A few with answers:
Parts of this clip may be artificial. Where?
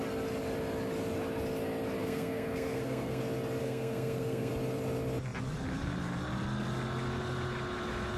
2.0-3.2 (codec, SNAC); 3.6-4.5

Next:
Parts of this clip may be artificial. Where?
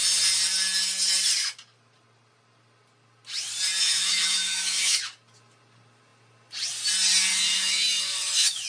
3.8-5.0 (autoencoder, DAC-VAE); 7.3-8.7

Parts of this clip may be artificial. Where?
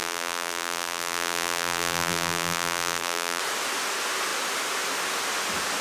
0.0-3.4 (vocoder, BigVGAN v2)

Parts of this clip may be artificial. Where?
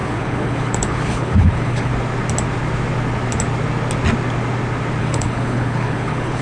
0.0-1.9 (codec, HILCodec); 5.0-6.4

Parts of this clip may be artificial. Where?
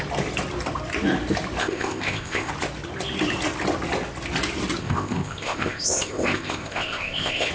1.6-2.5 (codec, ZipCodec); 4.8-7.5